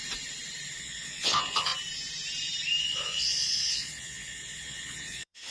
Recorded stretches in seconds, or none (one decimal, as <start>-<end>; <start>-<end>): 0.0-0.8; 1.7-2.8